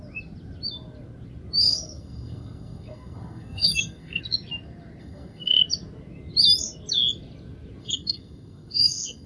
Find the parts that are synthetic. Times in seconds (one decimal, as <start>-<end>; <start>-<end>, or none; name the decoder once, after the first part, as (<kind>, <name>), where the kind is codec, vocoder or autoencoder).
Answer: 1.6-4.2 (codec, SNAC); 5.0-5.6; 7.8-9.3